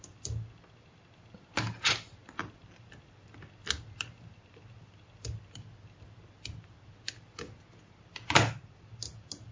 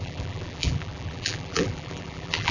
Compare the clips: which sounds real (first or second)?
first